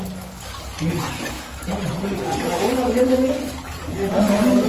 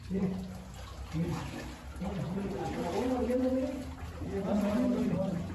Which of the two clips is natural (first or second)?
second